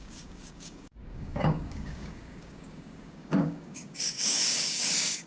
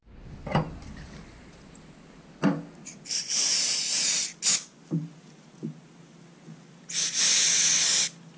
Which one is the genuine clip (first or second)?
second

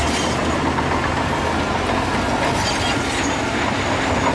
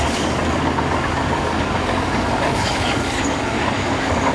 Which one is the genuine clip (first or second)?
first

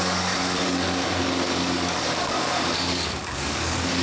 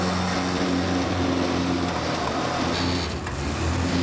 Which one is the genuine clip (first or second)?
second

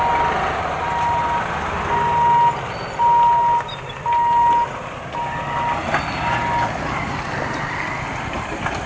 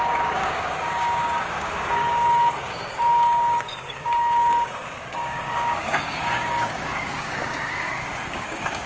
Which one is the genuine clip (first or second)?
first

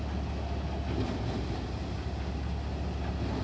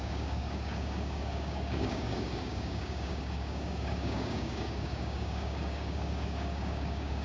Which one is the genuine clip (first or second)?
first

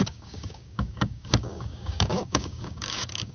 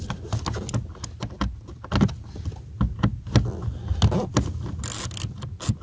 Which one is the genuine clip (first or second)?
second